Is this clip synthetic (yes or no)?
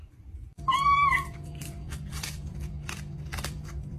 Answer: yes